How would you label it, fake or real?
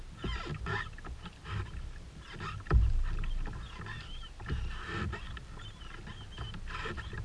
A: real